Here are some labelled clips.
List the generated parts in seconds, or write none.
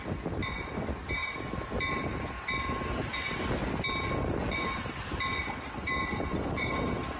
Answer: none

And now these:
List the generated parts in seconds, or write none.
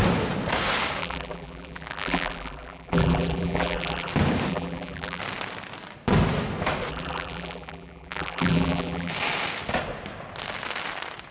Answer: 1.0-4.1 (vocoder, BigVGAN v2); 4.5-5.2; 6.9-9.1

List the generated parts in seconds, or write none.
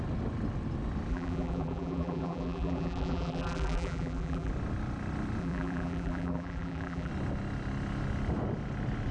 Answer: 1.1-4.5 (vocoder, BigVGAN v2); 5.4-7.1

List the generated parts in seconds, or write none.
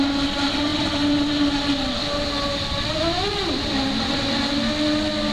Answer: none